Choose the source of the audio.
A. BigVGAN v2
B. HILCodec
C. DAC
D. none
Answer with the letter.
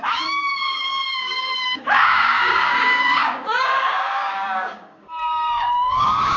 C